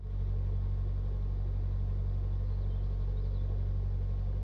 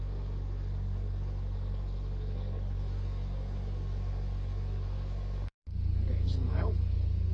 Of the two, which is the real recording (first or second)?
first